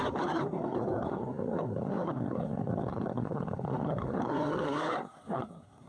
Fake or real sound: fake